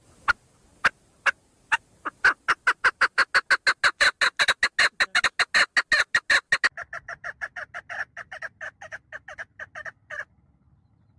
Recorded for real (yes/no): yes